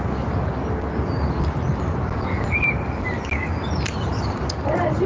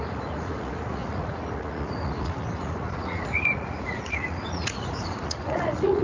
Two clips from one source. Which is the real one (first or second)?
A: first